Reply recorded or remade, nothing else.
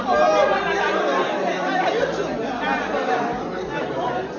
recorded